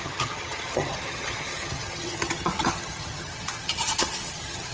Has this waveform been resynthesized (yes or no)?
yes